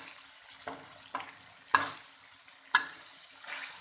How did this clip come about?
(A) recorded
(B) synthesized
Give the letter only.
A